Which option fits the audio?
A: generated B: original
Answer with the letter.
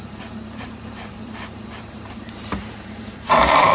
A